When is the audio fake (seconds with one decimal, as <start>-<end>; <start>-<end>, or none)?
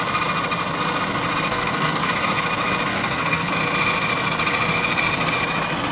1.5-2.1; 2.9-3.5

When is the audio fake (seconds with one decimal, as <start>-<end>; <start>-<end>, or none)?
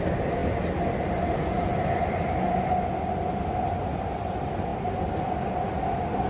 none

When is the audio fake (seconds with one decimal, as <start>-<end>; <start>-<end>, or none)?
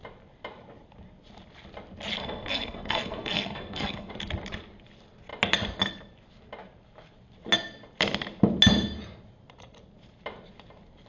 2.2-4.1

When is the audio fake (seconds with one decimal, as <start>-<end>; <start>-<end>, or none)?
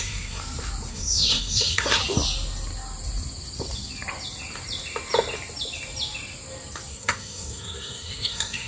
0.0-0.4; 0.9-2.0; 6.9-8.7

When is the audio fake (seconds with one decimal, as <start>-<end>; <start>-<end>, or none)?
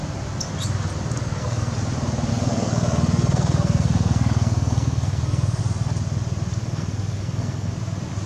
1.2-1.7; 2.3-5.6; 6.6-7.7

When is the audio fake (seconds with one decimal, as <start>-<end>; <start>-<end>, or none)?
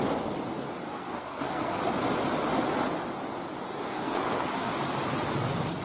0.9-1.8; 3.8-4.7